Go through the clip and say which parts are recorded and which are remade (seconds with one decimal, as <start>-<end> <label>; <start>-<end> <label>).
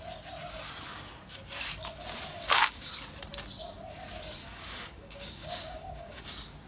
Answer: 0.0-2.3 recorded; 2.3-2.9 remade; 2.9-4.4 recorded; 4.4-6.2 remade; 6.2-6.7 recorded